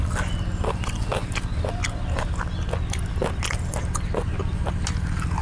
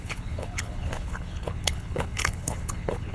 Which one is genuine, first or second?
first